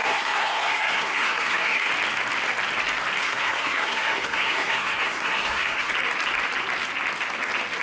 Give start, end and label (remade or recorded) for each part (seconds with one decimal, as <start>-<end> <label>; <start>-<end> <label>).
0.0-1.9 remade; 1.9-3.2 recorded; 3.2-5.9 remade; 5.9-7.8 recorded